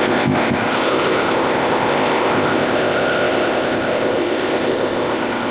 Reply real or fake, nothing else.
fake